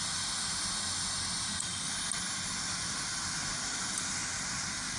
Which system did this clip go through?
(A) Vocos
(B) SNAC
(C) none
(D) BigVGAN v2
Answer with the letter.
C